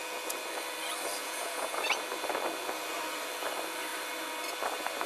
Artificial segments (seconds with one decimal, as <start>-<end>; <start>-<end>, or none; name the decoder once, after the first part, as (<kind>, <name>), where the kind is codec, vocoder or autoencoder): 1.2-1.8 (vocoder, Vocos)